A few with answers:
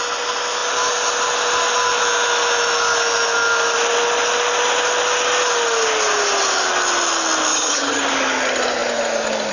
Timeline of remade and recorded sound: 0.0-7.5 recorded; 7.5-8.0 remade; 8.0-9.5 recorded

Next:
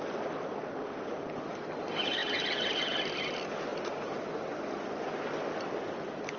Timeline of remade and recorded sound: 0.0-6.4 recorded

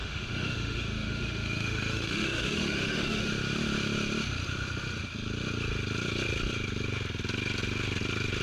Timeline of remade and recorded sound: 0.0-3.3 remade; 3.3-8.4 recorded

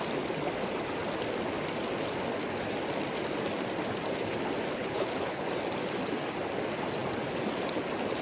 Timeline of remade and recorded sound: 0.0-4.7 recorded; 4.7-5.4 remade; 5.4-8.2 recorded

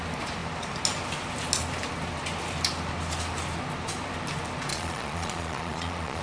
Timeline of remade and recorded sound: 0.0-4.7 recorded; 4.7-6.2 remade

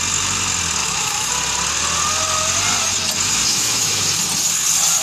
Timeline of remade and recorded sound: 0.0-0.8 recorded; 0.8-1.3 remade; 1.3-3.5 recorded; 3.5-4.0 remade; 4.0-5.0 recorded

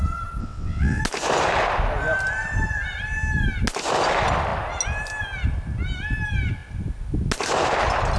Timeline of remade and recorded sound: 0.0-0.4 recorded; 0.4-1.0 remade; 1.0-8.2 recorded